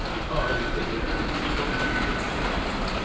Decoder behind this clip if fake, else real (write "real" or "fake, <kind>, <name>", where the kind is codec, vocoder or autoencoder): real